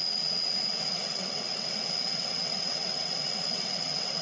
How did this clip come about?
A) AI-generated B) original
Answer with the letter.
A